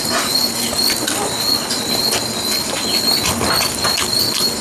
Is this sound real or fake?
real